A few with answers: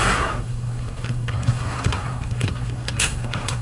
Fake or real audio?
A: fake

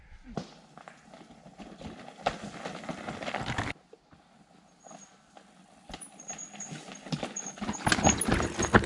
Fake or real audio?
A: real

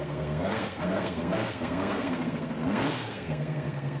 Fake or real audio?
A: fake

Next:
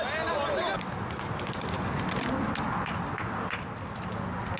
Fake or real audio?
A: real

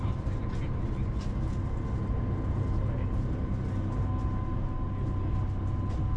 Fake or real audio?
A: real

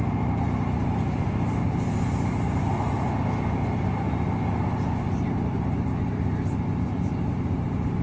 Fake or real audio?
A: real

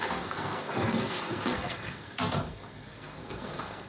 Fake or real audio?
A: fake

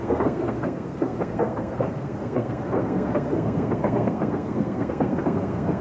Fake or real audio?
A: fake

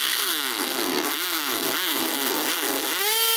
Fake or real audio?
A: fake